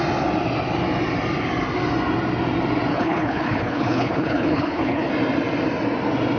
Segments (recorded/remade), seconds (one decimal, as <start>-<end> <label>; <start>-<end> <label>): 0.0-2.9 recorded; 2.9-5.1 remade; 5.1-6.4 recorded